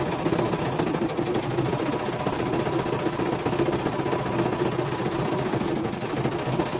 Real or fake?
real